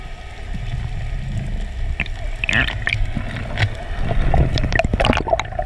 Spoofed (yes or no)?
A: no